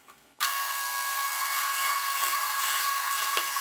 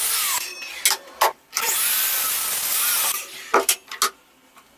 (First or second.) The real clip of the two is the second